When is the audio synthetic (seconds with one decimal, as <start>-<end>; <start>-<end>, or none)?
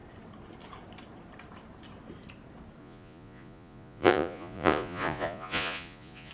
2.8-6.3